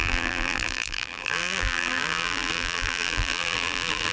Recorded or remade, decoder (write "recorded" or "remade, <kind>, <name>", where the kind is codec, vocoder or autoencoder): remade, vocoder, BigVGAN v2